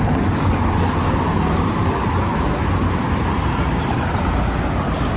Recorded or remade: recorded